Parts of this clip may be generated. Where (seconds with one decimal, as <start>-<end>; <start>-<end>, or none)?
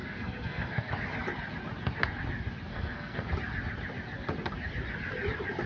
0.0-0.9; 2.7-3.3